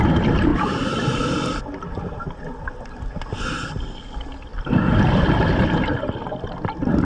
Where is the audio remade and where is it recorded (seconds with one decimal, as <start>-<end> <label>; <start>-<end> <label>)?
0.0-0.5 recorded; 0.5-1.6 remade; 1.6-4.5 recorded; 4.5-6.0 remade; 6.0-7.0 recorded